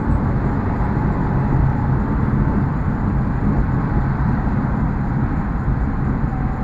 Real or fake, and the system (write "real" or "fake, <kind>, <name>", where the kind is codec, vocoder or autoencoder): real